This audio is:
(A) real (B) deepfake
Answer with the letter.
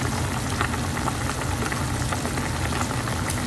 A